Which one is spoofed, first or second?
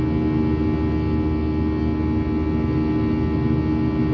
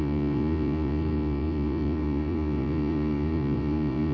second